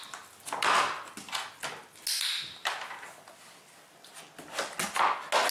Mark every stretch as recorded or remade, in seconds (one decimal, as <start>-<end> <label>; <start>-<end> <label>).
0.0-5.5 recorded